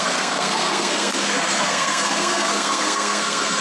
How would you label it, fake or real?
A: fake